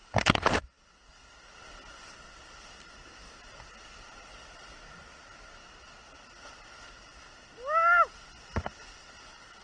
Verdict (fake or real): real